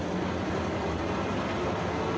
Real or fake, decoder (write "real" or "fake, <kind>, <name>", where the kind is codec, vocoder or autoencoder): real